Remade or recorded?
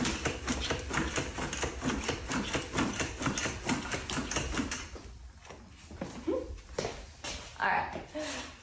recorded